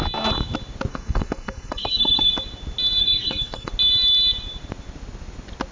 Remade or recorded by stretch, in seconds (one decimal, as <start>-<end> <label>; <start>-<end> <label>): 0.0-0.9 recorded; 0.9-2.3 remade; 2.3-3.0 recorded; 3.0-3.7 remade; 3.7-5.7 recorded